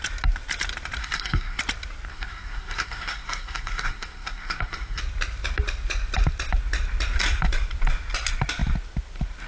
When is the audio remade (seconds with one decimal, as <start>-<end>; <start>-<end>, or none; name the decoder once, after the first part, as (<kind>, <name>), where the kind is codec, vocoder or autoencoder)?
1.0-1.6 (codec, SNAC); 2.1-5.0